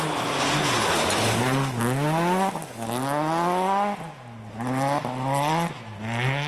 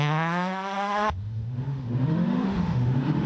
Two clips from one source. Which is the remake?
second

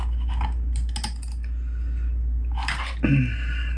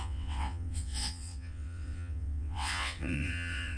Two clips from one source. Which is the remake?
second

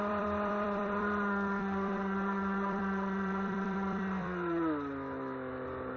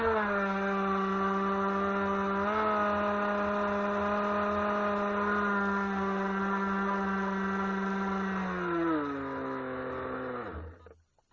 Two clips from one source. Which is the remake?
first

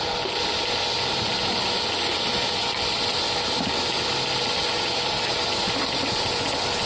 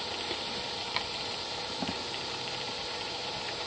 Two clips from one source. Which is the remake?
second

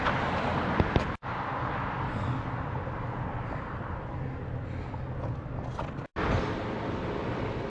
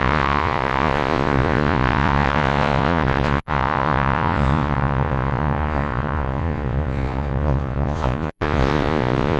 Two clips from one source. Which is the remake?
second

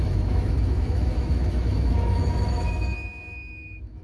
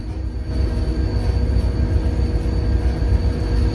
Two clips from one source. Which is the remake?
first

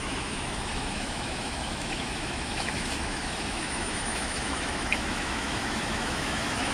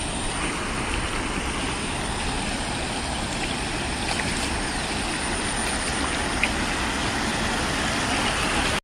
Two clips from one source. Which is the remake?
first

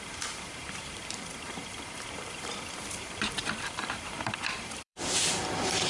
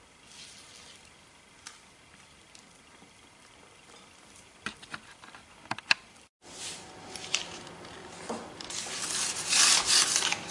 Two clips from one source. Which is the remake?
first